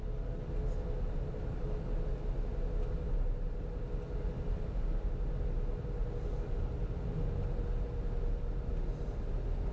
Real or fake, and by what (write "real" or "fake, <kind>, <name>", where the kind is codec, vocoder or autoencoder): real